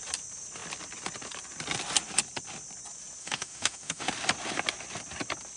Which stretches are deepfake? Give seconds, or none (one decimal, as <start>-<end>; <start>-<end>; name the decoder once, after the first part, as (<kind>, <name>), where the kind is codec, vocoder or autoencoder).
3.2-4.1 (autoencoder, DAC-VAE)